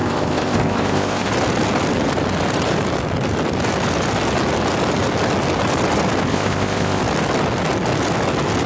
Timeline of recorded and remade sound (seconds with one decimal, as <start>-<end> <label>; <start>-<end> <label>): 0.0-1.3 remade; 1.3-6.3 recorded; 6.3-7.0 remade; 7.0-8.7 recorded